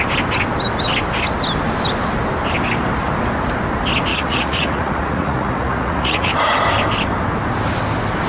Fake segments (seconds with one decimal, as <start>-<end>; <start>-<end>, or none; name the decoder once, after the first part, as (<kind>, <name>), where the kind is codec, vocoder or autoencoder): 4.1-6.3 (vocoder, Vocos)